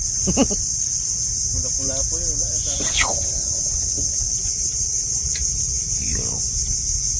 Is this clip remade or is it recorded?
recorded